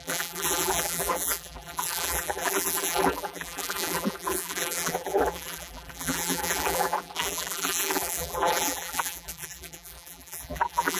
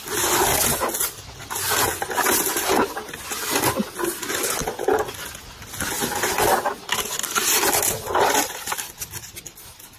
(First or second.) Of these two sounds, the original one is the second